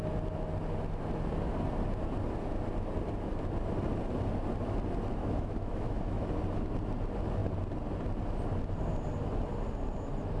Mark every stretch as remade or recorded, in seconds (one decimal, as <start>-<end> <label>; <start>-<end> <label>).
0.0-5.2 recorded; 5.2-6.2 remade; 6.2-10.4 recorded